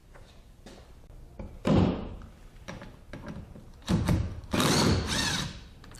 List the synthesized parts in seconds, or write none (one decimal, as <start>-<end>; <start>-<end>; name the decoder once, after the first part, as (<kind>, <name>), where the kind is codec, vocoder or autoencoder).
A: 0.0-2.1 (vocoder, BigVGAN v2); 3.8-4.4